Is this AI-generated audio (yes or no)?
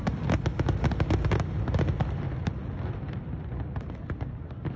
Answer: no